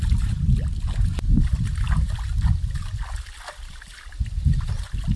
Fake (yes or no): no